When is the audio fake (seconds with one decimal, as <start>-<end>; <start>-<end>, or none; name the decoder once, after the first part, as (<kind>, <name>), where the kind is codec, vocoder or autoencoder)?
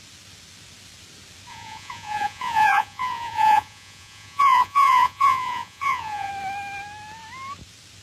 1.5-6.3 (vocoder, Vocos)